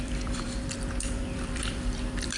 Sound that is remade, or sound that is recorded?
remade